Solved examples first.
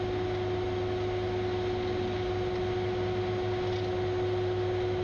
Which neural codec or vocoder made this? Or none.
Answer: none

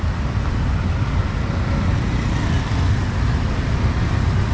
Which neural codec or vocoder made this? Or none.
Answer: none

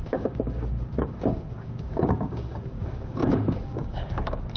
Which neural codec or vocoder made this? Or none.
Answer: codec, DAC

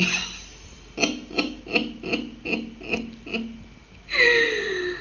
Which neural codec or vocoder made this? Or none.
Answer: none